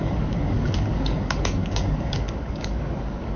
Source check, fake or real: fake